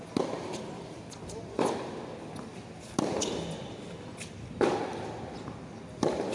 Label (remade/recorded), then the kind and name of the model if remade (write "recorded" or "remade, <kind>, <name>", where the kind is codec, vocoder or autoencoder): recorded